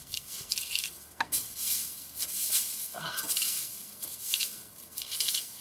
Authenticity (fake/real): fake